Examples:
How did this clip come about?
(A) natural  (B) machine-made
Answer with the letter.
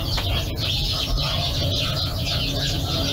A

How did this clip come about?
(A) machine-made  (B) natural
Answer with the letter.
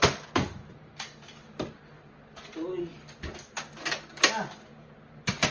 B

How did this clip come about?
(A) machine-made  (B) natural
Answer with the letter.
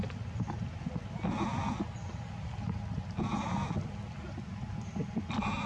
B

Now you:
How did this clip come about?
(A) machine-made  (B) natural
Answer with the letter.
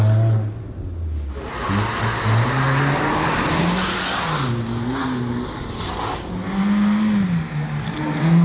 B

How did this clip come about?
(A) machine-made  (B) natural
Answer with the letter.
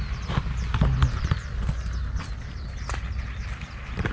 B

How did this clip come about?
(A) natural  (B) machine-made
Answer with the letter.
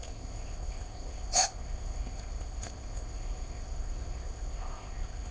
B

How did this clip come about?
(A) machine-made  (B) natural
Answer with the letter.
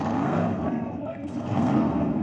A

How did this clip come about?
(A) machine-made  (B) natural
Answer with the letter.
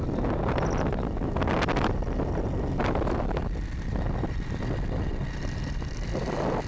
B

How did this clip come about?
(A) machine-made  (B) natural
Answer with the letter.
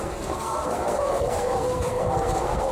A